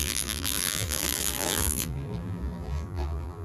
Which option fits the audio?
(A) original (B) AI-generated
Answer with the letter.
B